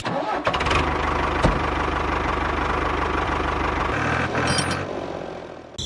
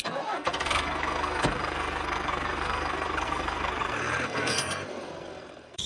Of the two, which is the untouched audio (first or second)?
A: first